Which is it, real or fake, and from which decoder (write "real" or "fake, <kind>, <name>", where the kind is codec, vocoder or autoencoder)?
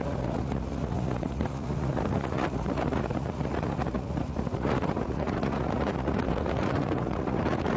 fake, vocoder, Vocos